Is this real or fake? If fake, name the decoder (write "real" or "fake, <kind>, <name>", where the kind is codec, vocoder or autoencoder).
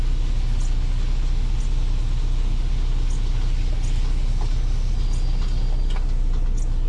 real